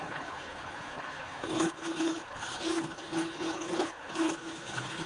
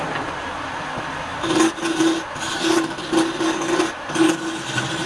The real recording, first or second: second